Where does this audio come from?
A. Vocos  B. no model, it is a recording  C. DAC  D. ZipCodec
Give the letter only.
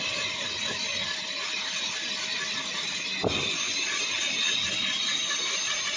B